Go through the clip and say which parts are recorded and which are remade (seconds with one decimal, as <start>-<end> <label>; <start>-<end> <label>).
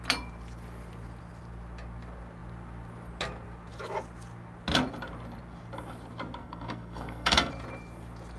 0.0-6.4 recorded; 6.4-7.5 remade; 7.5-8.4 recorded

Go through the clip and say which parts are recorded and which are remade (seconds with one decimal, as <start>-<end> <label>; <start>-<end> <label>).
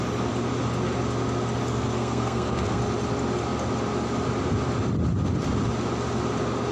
0.0-1.7 recorded; 1.7-2.8 remade; 2.8-6.7 recorded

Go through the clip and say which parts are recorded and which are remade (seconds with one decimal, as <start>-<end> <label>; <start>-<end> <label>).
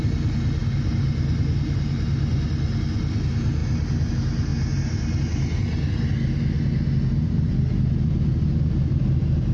0.0-9.5 recorded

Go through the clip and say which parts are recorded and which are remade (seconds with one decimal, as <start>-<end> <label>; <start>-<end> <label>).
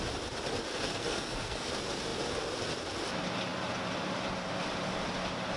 0.0-0.7 recorded; 0.7-1.7 remade; 1.7-5.6 recorded